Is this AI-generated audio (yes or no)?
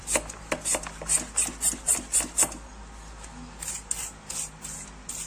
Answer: no